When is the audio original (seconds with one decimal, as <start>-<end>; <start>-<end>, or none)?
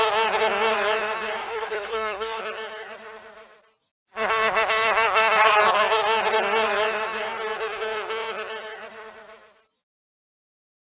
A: 0.0-1.4; 2.4-10.9